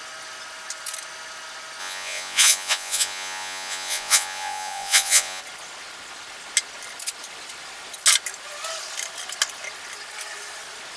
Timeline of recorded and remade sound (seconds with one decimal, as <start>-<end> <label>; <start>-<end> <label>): 0.0-1.8 recorded; 1.8-5.4 remade; 5.4-11.0 recorded